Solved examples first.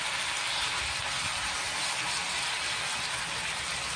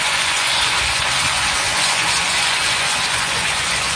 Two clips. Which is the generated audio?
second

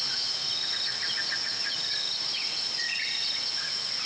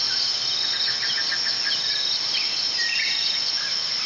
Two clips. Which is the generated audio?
first